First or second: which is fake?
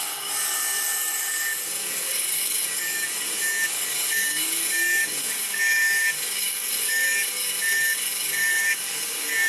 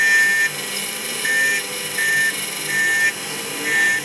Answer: first